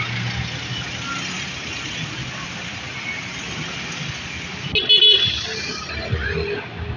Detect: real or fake real